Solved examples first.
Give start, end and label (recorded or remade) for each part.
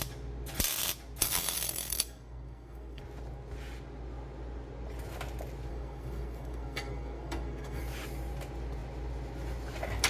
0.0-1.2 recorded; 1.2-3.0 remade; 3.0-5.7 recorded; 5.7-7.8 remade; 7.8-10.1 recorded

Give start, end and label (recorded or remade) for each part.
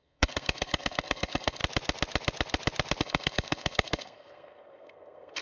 0.0-1.6 remade; 1.6-3.0 recorded; 3.0-5.4 remade